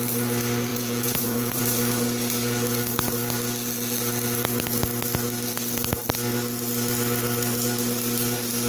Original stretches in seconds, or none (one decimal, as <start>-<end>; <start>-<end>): 0.0-0.7; 1.6-8.7